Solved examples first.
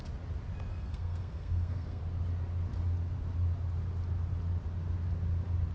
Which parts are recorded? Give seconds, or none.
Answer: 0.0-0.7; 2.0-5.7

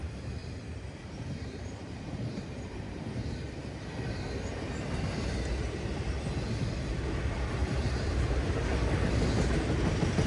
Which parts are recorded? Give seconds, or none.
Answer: 0.0-0.4; 3.6-7.6; 8.5-10.3

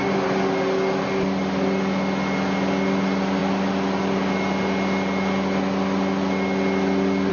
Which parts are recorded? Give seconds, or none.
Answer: 0.0-7.3

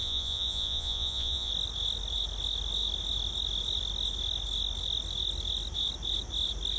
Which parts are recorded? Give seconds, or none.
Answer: 1.5-6.8

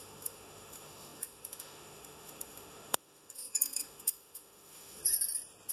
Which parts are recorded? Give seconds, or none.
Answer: 5.0-5.7

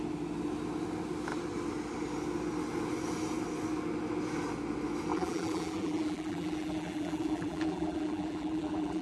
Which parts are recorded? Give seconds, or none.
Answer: 0.0-5.1

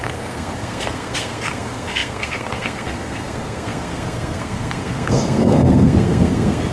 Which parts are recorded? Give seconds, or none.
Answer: none